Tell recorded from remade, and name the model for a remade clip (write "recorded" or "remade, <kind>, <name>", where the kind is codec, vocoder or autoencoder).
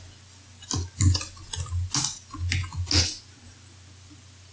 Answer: recorded